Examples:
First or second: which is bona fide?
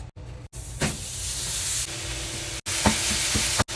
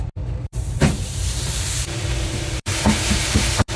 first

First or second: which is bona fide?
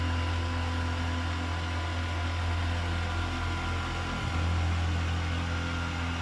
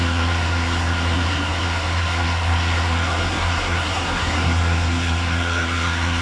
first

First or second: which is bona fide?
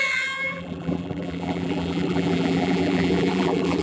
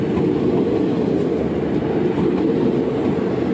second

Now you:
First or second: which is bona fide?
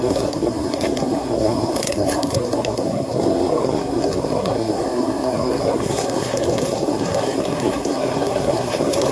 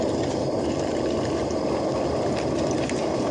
second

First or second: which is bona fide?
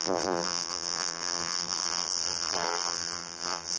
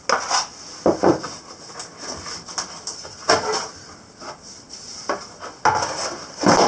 second